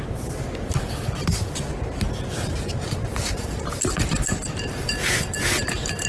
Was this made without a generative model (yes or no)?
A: no